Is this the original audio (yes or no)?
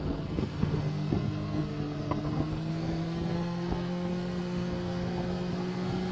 no